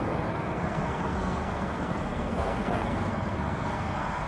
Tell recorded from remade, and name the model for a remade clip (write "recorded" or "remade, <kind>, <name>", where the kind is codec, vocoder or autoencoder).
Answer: remade, codec, SNAC